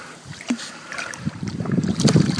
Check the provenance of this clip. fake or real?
fake